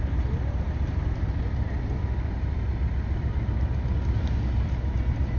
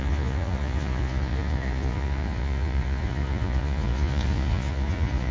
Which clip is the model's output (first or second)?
second